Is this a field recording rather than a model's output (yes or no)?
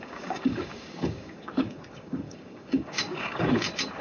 no